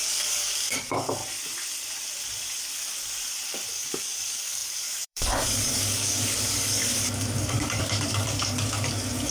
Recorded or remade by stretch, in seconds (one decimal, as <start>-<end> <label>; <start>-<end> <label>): 0.0-1.2 remade; 1.2-3.7 recorded; 3.7-9.3 remade